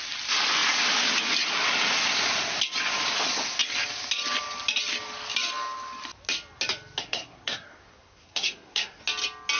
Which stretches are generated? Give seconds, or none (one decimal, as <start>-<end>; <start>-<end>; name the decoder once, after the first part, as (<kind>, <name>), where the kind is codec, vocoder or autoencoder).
7.0-9.0 (codec, SNAC)